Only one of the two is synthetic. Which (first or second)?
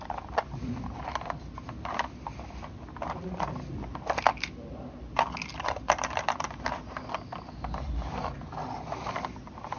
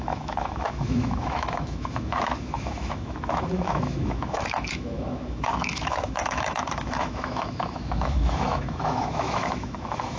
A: second